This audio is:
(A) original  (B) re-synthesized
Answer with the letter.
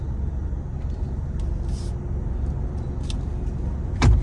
A